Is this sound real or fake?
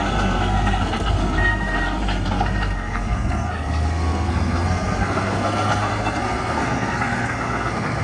fake